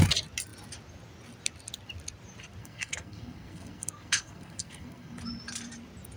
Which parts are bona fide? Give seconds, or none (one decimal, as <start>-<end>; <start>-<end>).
0.0-2.6; 5.2-6.2